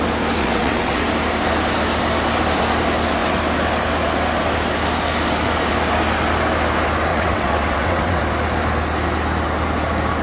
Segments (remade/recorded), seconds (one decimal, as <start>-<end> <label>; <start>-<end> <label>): 0.0-0.4 recorded; 0.4-1.0 remade; 1.0-7.1 recorded; 7.1-8.2 remade; 8.2-10.2 recorded